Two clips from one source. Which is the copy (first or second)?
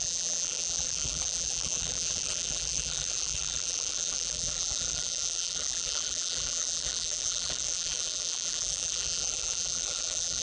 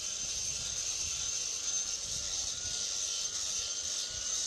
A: first